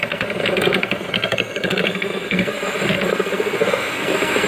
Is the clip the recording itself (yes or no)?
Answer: no